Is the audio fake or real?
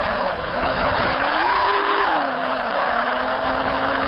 fake